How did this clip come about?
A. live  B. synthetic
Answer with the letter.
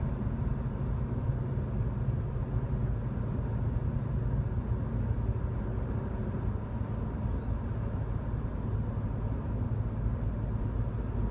A